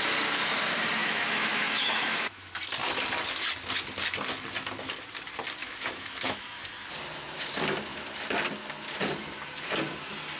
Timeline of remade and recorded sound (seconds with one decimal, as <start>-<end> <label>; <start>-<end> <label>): 0.0-1.0 recorded; 1.0-2.5 remade; 2.5-5.6 recorded; 5.6-6.7 remade; 6.7-10.4 recorded